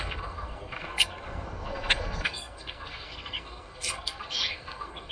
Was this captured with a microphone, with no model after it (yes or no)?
no